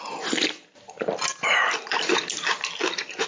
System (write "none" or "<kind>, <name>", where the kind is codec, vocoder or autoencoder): none